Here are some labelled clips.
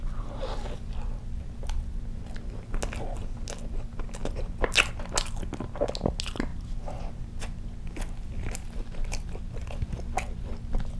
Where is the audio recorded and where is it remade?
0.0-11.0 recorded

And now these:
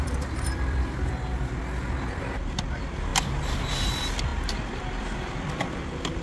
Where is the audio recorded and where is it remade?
0.0-1.6 remade; 1.6-2.2 recorded; 2.2-6.2 remade

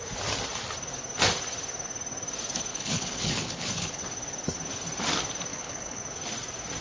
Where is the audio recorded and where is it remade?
0.0-2.7 recorded; 2.7-4.0 remade; 4.0-5.5 recorded; 5.5-6.0 remade; 6.0-6.8 recorded

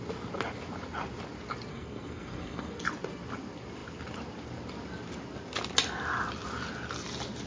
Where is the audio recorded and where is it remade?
0.0-1.7 recorded; 1.7-2.8 remade; 2.8-7.5 recorded

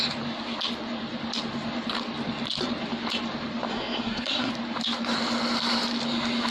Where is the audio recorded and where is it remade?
0.0-3.7 recorded; 3.7-4.5 remade; 4.5-6.5 recorded

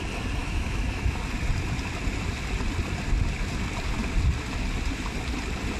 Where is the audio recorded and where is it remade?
0.0-0.4 recorded; 0.4-1.2 remade; 1.2-5.8 recorded

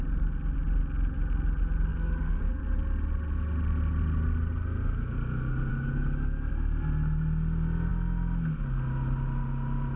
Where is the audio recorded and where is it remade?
0.0-1.9 recorded; 1.9-2.6 remade; 2.6-10.0 recorded